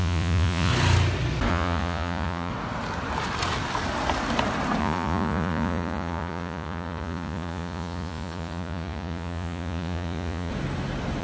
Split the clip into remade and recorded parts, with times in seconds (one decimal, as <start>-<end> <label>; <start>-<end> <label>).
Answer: 0.0-0.7 remade; 0.7-1.5 recorded; 1.5-2.5 remade; 2.5-4.8 recorded; 4.8-10.5 remade; 10.5-11.2 recorded